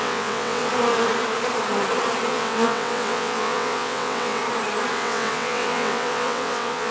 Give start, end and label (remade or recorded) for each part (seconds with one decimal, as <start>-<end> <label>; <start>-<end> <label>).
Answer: 0.0-0.7 remade; 0.7-2.3 recorded; 2.3-4.4 remade; 4.4-4.9 recorded; 4.9-6.9 remade